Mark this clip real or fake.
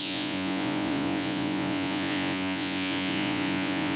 fake